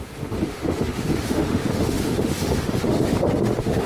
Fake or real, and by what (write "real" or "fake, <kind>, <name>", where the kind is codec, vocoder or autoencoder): fake, autoencoder, DAC-VAE